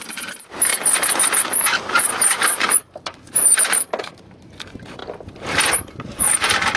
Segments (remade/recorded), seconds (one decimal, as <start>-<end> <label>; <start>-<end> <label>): 0.0-0.7 remade; 0.7-2.0 recorded; 2.0-6.8 remade